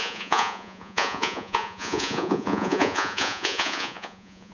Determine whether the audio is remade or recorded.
remade